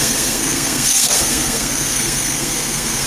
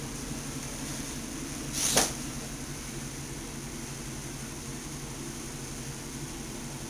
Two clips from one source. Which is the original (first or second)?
second